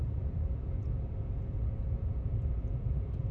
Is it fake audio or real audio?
fake